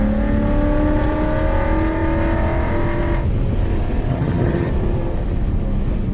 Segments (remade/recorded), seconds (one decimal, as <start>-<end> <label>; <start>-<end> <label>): 0.0-4.1 recorded; 4.1-4.7 remade; 4.7-6.1 recorded